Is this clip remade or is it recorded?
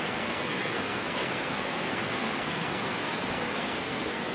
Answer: remade